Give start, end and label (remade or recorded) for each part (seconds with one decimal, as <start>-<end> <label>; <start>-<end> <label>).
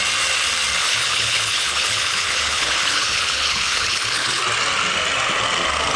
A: 0.0-0.8 recorded; 0.8-4.4 remade; 4.4-6.0 recorded